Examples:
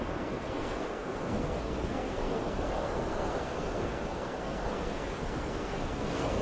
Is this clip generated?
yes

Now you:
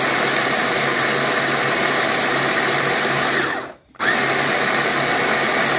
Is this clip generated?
no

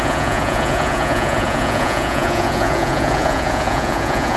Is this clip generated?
yes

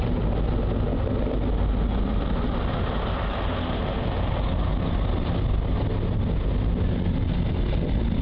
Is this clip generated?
no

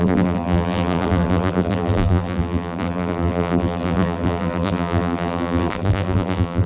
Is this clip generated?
yes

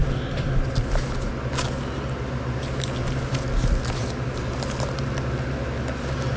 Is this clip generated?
no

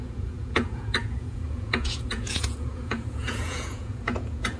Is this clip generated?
yes